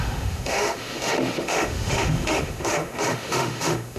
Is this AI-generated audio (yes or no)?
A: yes